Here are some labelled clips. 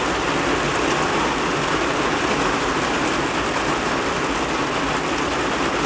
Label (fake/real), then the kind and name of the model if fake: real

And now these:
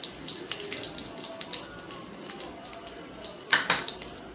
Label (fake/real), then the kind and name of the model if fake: real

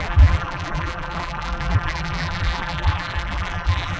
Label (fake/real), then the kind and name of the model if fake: fake, vocoder, BigVGAN v2